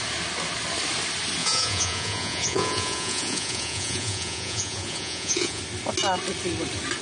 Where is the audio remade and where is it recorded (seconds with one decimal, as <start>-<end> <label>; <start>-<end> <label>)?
0.0-1.4 recorded; 1.4-5.6 remade; 5.6-7.0 recorded